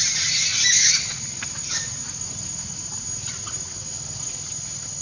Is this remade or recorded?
recorded